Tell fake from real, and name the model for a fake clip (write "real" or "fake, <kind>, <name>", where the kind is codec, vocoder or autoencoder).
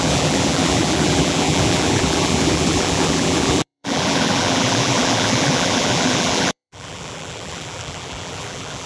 fake, vocoder, BigVGAN v2